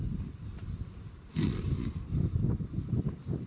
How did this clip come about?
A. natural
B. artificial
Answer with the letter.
A